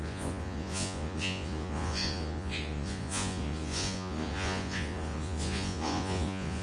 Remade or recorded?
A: remade